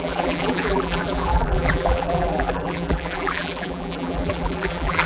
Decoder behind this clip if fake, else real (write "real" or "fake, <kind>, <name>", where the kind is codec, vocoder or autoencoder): fake, vocoder, BigVGAN v2